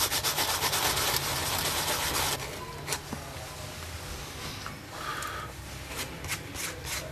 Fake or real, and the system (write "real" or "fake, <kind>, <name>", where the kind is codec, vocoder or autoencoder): real